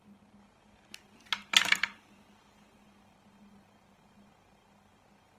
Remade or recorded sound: recorded